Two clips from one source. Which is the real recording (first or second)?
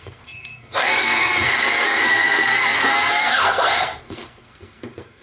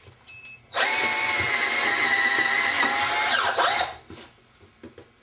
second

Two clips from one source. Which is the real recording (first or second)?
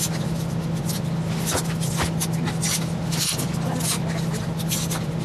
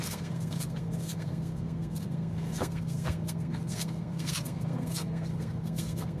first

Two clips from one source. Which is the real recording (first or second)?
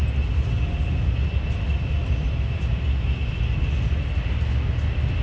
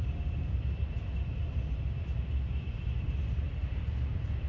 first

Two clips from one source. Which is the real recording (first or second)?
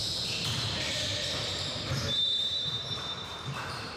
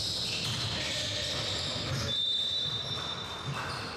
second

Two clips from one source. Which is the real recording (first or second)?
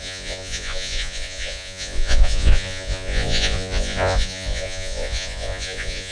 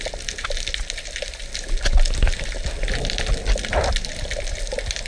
second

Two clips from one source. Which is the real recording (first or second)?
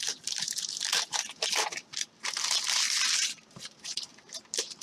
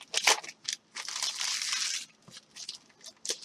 second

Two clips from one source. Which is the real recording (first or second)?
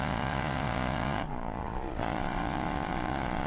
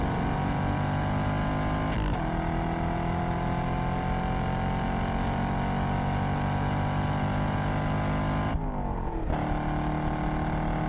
second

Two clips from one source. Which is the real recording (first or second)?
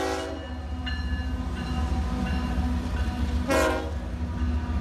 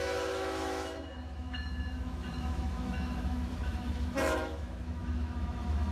first